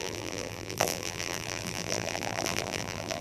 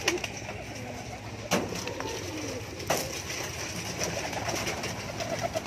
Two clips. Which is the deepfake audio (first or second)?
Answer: first